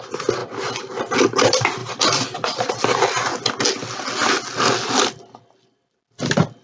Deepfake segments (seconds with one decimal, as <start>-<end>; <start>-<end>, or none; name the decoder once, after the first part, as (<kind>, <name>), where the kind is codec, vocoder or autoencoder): 0.4-0.9 (vocoder, BigVGAN v2); 1.8-2.7